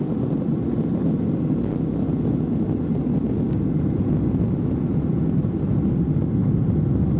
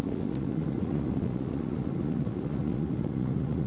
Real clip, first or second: first